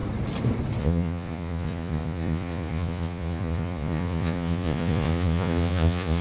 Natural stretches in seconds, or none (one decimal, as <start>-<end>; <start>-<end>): 0.0-0.8